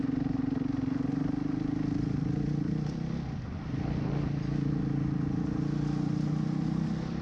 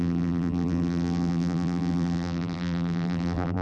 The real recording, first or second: first